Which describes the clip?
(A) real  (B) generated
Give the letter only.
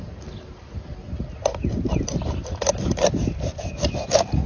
A